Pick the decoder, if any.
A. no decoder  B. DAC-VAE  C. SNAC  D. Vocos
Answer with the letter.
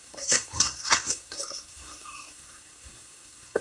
C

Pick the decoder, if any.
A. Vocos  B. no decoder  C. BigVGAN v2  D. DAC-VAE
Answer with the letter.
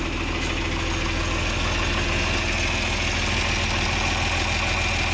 B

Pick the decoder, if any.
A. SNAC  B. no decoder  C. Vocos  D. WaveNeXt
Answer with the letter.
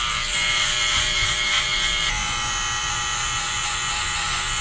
C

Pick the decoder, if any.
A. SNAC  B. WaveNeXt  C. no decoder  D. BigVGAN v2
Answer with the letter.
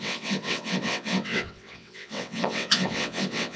B